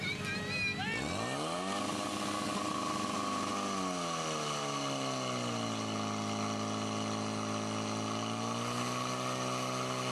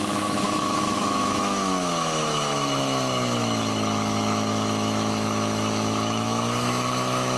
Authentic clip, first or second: first